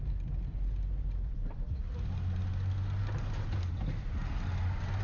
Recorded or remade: recorded